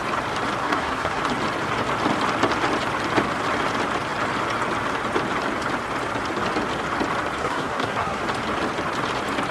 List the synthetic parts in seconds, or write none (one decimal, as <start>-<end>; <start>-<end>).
0.6-1.2; 7.4-8.2